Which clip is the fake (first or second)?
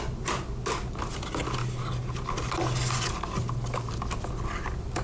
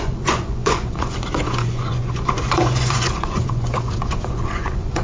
second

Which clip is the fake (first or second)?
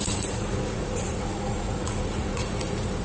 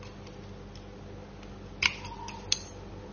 first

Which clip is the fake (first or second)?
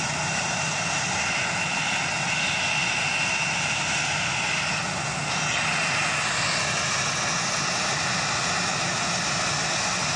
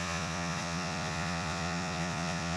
second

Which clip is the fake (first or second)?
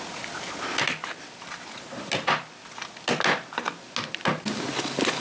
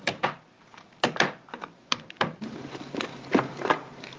second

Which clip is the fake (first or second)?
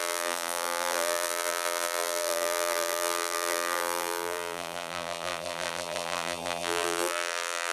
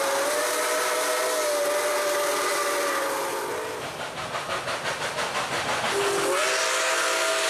first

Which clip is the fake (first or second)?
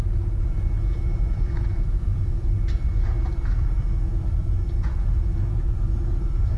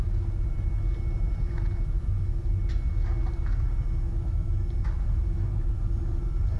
first